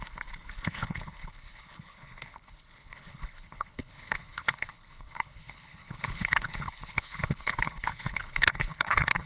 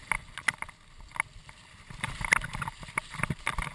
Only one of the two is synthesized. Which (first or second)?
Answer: first